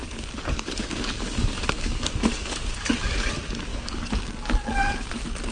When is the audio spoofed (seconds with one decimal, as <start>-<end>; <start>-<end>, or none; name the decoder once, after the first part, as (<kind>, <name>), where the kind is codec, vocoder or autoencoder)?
0.0-3.3 (codec, DAC); 3.7-5.1